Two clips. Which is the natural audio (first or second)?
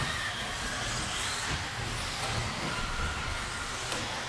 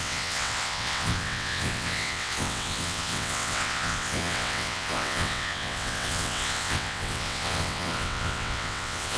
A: first